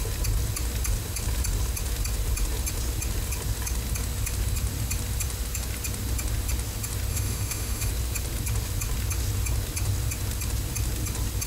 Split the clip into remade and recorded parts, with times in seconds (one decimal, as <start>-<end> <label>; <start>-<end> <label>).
0.0-7.1 recorded; 7.1-7.9 remade; 7.9-11.5 recorded